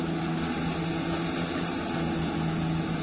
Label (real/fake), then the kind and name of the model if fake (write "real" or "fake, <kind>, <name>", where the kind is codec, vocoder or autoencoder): real